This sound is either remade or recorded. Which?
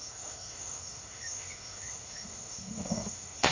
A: remade